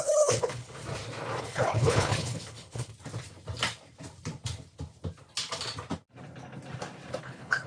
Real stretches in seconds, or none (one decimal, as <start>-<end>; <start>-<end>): 0.8-1.4; 2.9-7.2